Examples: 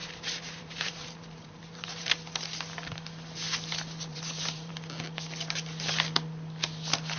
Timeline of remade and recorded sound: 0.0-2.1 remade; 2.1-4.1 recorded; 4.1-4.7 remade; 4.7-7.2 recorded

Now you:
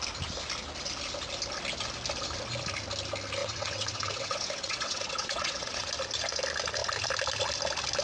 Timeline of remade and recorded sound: 0.0-3.4 recorded; 3.4-5.9 remade; 5.9-8.0 recorded

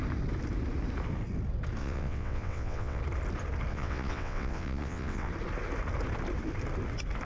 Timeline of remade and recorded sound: 0.0-1.8 recorded; 1.8-3.0 remade; 3.0-3.7 recorded; 3.7-5.3 remade; 5.3-7.2 recorded

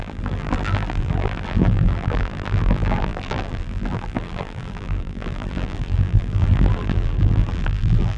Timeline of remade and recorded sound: 0.0-8.2 remade

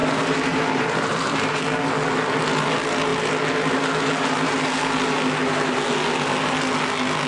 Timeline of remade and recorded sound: 0.0-1.6 remade; 1.6-7.3 recorded

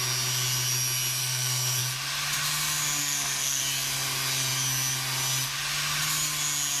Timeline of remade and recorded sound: 0.0-1.2 recorded; 1.2-1.8 remade; 1.8-3.0 recorded; 3.0-3.6 remade; 3.6-6.8 recorded